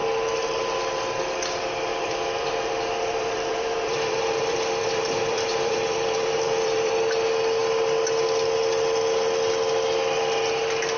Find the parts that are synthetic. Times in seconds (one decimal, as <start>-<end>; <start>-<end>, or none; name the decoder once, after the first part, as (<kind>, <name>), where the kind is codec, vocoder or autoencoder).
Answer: 1.9-6.9 (vocoder, BigVGAN v2)